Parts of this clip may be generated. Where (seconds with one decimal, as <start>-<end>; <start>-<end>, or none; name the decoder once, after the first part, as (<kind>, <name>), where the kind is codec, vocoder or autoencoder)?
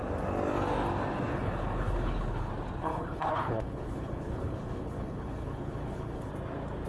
1.3-2.5 (codec, HILCodec); 2.9-6.3